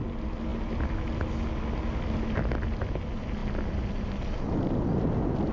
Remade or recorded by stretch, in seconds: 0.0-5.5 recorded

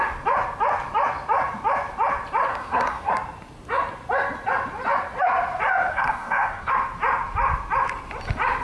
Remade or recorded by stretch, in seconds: 0.0-2.5 recorded; 2.5-3.1 remade; 3.1-5.9 recorded; 5.9-6.7 remade; 6.7-8.6 recorded

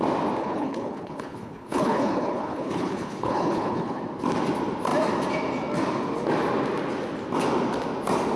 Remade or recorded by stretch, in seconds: 0.0-0.4 recorded; 0.4-4.0 remade; 4.0-8.4 recorded